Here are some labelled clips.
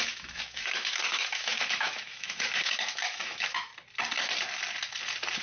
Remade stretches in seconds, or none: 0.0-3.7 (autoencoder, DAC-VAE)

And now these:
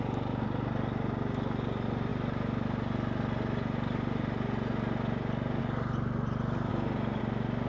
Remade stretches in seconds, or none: none

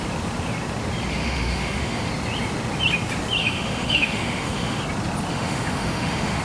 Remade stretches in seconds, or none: 1.2-2.1 (autoencoder, DAC-VAE); 3.4-4.8; 5.3-6.4

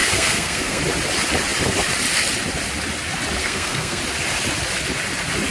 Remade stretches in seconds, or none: 0.0-0.8 (codec, SNAC); 3.4-4.0

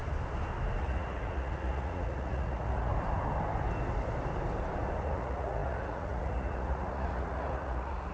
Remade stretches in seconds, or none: 0.8-2.9 (vocoder, Vocos); 5.0-8.1

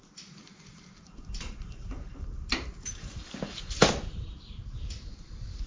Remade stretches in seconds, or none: 0.4-3.8 (vocoder, BigVGAN v2)

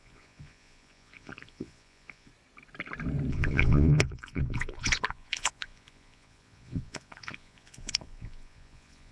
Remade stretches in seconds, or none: 0.0-2.3 (vocoder, Vocos); 3.3-9.1

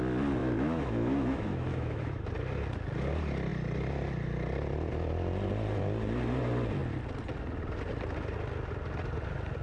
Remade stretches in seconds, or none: 0.4-2.3 (autoencoder, DAC-VAE)